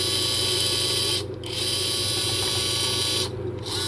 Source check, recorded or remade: recorded